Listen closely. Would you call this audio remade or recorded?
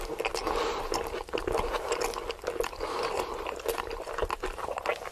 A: recorded